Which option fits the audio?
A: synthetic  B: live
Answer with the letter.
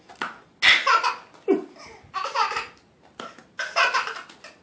B